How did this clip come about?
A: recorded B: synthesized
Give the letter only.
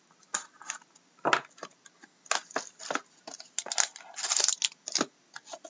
A